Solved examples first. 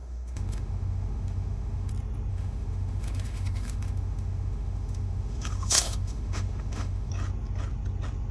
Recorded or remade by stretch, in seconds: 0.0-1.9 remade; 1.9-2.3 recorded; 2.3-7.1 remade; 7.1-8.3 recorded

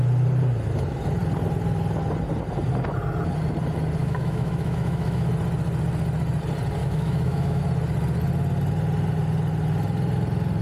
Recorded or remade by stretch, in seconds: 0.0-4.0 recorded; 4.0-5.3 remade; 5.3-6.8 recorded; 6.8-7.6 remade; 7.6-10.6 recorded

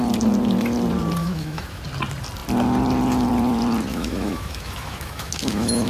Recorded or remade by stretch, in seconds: 0.0-1.2 recorded; 1.2-1.8 remade; 1.8-3.9 recorded; 3.9-5.9 remade